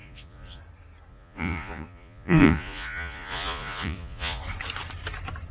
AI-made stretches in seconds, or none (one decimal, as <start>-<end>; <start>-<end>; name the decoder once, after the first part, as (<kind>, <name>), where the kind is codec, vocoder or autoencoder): 0.0-0.6 (vocoder, Vocos); 1.1-4.4